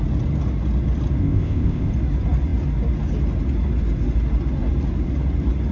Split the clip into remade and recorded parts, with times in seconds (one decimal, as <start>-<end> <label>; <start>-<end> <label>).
0.0-1.2 recorded; 1.2-1.9 remade; 1.9-5.7 recorded